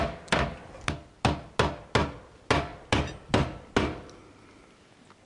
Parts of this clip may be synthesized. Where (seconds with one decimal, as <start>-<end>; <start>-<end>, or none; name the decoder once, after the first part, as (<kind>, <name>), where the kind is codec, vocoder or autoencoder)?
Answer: none